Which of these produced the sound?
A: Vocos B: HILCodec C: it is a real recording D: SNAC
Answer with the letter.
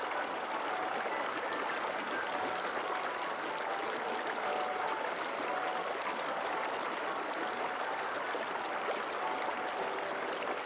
C